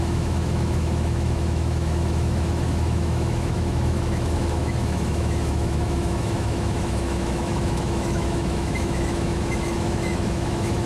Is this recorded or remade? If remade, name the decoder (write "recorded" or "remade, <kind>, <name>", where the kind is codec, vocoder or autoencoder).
remade, autoencoder, DAC-VAE